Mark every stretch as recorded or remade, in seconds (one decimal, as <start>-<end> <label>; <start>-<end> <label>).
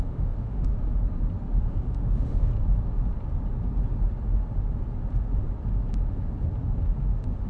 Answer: 0.0-0.7 remade; 0.7-1.6 recorded; 1.6-2.5 remade; 2.5-7.0 recorded; 7.0-7.5 remade